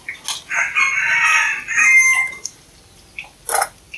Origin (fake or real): real